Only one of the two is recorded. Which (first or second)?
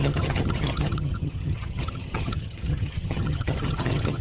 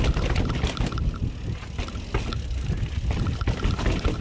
second